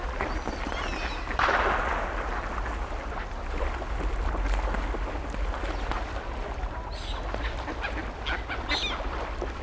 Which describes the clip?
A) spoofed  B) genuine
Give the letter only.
B